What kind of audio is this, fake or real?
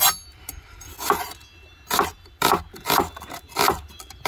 real